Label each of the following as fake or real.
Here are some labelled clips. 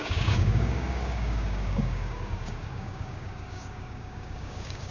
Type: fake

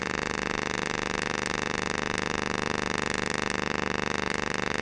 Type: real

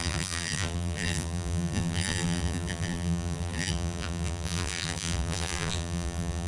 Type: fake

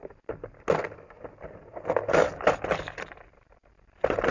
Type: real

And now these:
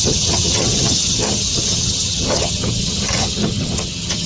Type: fake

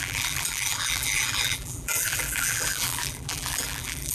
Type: fake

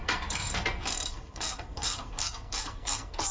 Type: fake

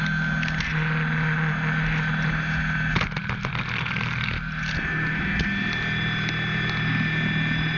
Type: real